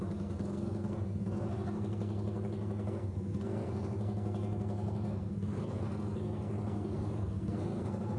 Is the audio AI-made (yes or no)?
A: yes